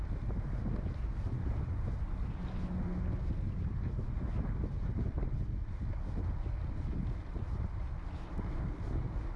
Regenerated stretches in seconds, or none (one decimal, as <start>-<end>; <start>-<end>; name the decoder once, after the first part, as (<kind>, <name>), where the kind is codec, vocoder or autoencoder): none